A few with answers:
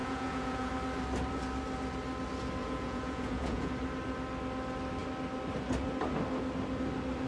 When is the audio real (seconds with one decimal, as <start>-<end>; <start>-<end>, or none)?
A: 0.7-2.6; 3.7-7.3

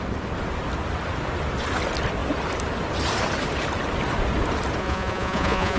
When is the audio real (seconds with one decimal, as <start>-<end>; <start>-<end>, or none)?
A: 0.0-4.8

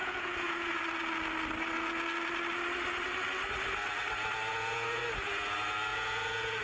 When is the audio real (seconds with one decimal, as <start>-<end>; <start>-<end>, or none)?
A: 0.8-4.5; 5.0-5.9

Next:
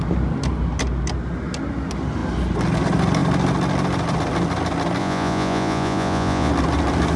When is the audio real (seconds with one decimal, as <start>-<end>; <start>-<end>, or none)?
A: 0.0-5.0; 6.5-7.2

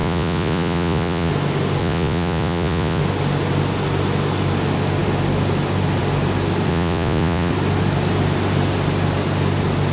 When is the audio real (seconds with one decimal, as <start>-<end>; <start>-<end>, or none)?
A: 1.3-1.8; 3.0-6.7; 7.5-9.9

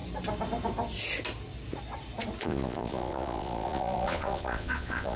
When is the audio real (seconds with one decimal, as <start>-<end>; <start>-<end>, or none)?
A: 0.0-2.4

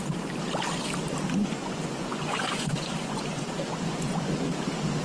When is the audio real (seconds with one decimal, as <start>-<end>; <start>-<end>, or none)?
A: 0.0-1.4; 4.4-5.0